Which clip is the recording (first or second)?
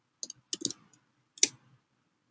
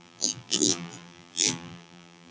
first